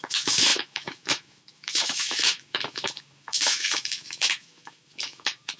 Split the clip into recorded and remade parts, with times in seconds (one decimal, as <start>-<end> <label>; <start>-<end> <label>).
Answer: 0.0-5.6 remade